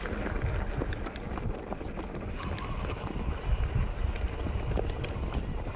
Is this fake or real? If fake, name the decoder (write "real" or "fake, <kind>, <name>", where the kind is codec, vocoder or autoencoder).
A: real